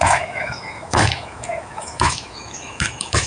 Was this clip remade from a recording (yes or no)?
yes